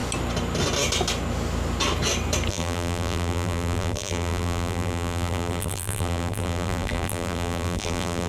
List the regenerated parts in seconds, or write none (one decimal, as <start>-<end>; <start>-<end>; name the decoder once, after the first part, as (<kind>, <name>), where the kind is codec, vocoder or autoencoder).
2.5-8.3 (vocoder, BigVGAN v2)